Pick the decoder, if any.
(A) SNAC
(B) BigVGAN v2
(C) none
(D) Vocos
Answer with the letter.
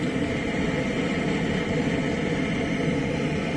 C